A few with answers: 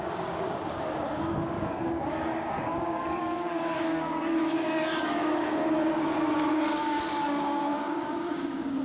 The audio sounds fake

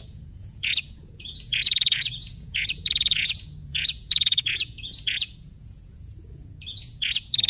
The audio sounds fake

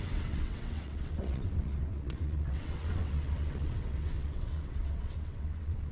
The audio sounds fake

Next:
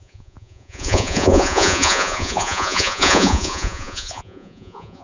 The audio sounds fake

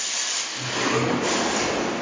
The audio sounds real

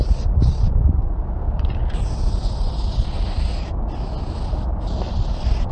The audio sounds real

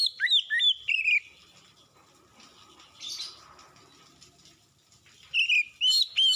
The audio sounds real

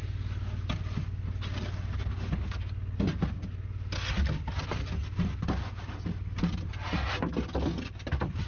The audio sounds real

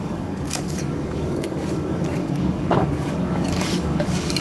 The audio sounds fake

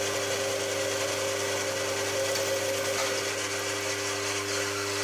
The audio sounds real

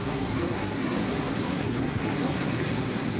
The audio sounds fake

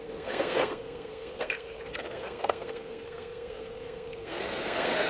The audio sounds fake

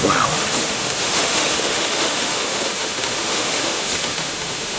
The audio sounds fake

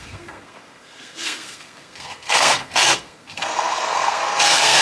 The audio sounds fake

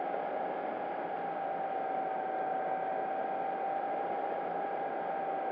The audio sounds real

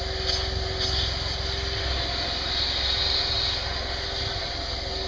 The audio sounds real